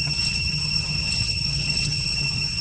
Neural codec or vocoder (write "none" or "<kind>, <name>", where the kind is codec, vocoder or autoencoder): vocoder, HiFi-GAN